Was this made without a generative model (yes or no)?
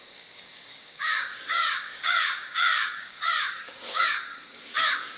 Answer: no